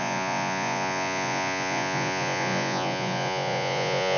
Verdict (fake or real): fake